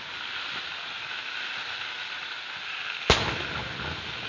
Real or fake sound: real